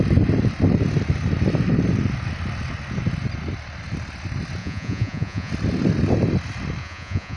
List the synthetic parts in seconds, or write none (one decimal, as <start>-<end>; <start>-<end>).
4.6-5.5; 6.8-7.4